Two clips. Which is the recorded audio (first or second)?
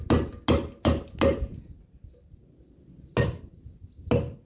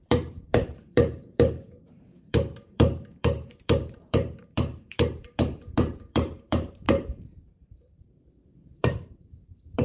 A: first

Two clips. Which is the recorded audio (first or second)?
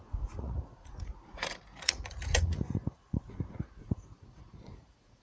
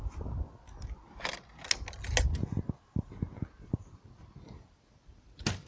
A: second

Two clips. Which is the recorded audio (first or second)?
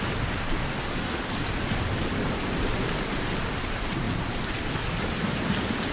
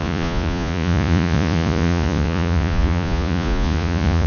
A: first